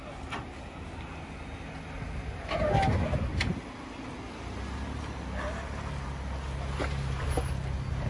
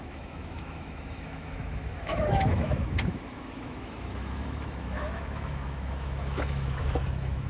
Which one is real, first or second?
first